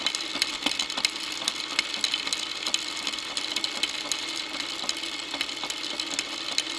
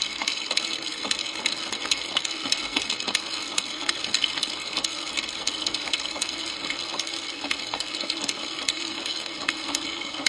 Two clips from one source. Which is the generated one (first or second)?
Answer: second